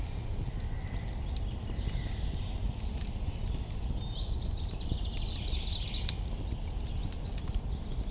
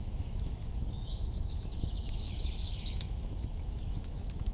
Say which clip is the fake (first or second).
second